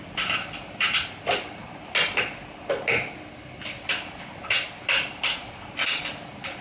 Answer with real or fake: real